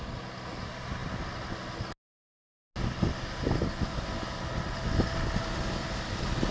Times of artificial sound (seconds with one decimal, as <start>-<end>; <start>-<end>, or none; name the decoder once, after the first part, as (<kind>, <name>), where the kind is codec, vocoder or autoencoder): none